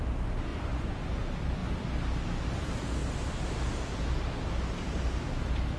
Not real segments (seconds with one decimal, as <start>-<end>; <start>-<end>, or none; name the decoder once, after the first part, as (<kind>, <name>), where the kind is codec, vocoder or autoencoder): 0.5-1.2 (vocoder, Vocos)